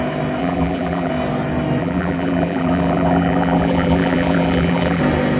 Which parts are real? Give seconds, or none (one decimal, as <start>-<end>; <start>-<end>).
0.0-0.4; 1.1-1.8; 5.0-5.4